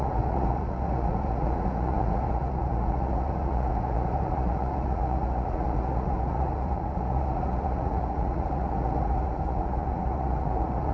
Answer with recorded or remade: remade